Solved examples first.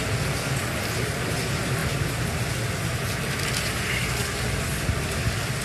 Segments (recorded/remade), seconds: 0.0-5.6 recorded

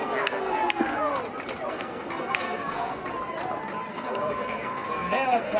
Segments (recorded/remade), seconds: 0.0-1.1 remade; 1.1-1.7 recorded; 1.7-3.0 remade; 3.0-3.9 recorded; 3.9-5.6 remade

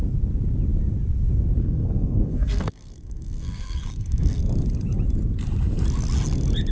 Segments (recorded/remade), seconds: 0.0-1.6 recorded; 1.6-4.4 remade; 4.4-6.7 recorded

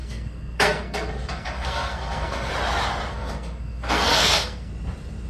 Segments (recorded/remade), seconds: 0.0-2.5 remade; 2.5-3.1 recorded; 3.1-4.7 remade; 4.7-5.3 recorded

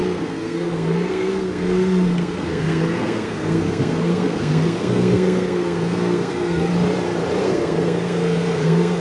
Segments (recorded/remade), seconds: 0.0-6.7 remade; 6.7-7.4 recorded; 7.4-9.0 remade

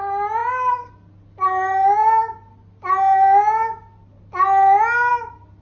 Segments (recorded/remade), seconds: 0.0-5.6 recorded

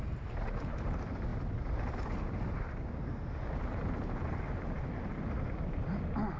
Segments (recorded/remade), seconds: 0.0-6.4 recorded